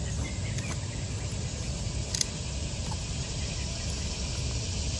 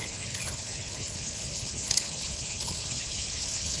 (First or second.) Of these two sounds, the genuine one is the first